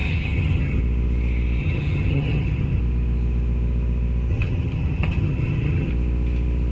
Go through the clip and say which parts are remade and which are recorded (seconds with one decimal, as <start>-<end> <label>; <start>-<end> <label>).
0.0-0.8 remade; 0.8-1.6 recorded; 1.6-2.8 remade; 2.8-4.3 recorded; 4.3-5.9 remade; 5.9-6.7 recorded